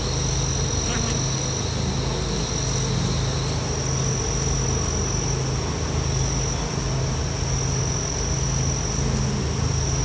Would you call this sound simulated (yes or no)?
no